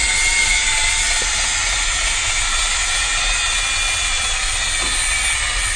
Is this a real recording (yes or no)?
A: yes